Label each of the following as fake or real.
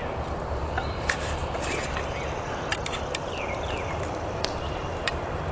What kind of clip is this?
fake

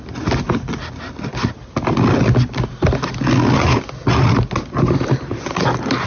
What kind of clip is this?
real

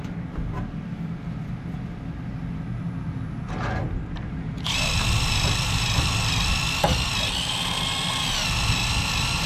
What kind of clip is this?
real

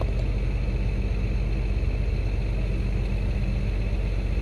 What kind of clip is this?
real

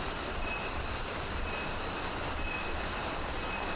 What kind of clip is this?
real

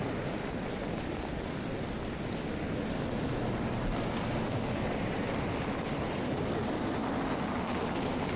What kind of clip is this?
real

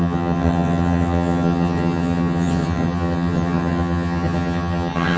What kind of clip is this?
fake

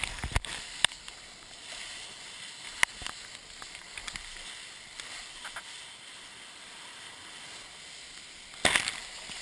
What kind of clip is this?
real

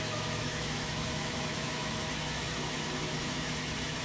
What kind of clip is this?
fake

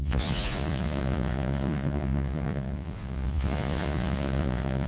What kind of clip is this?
fake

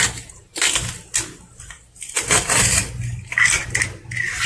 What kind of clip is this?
real